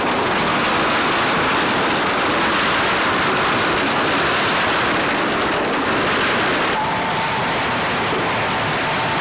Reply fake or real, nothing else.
real